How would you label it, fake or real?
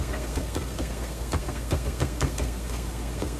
fake